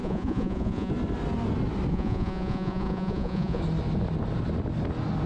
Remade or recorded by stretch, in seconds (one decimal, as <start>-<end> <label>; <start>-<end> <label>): 0.0-0.9 remade; 0.9-1.9 recorded; 1.9-3.6 remade; 3.6-5.3 recorded

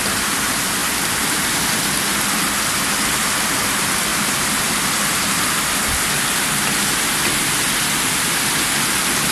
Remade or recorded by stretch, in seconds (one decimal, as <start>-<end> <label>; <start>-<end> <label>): 0.0-9.3 recorded

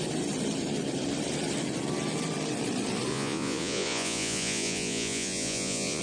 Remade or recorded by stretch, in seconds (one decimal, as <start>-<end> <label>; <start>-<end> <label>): 0.0-3.1 recorded; 3.1-6.0 remade

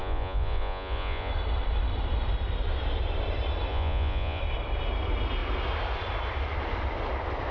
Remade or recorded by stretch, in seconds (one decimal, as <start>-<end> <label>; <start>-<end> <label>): 0.0-1.3 remade; 1.3-3.7 recorded; 3.7-4.4 remade; 4.4-7.5 recorded

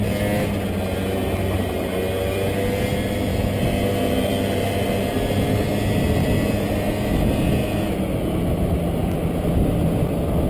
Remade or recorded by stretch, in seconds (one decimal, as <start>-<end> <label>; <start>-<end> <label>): 0.0-10.5 recorded

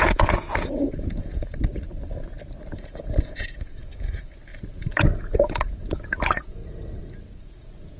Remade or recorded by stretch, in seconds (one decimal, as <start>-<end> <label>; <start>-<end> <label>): 0.0-1.5 remade; 1.5-2.7 recorded; 2.7-6.6 remade; 6.6-7.4 recorded; 7.4-8.0 remade